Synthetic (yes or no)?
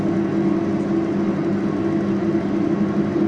no